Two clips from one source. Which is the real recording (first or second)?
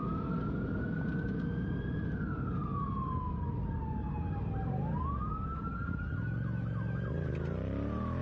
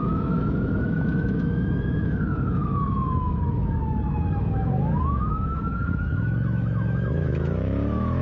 first